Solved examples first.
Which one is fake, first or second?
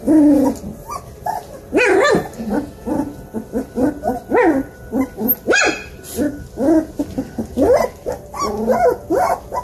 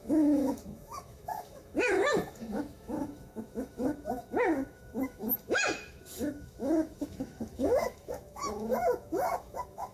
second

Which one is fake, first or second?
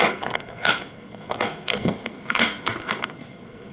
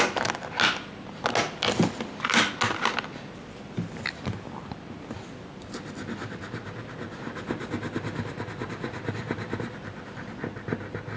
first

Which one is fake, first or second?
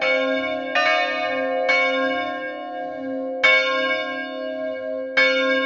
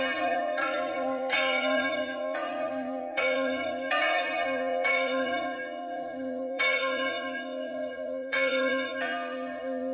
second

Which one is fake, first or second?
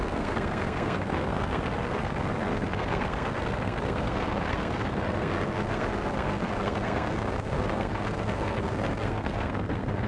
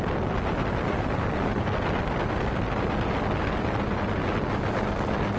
first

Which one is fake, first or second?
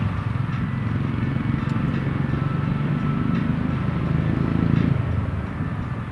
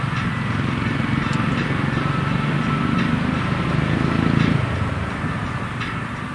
second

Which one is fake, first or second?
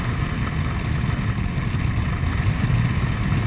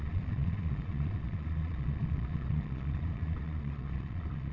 second